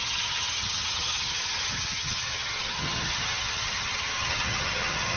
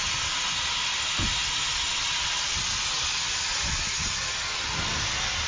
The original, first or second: second